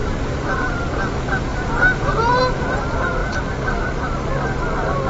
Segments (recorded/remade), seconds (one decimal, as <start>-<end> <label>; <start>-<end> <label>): 0.0-1.1 remade; 1.1-3.2 recorded; 3.2-4.2 remade; 4.2-5.1 recorded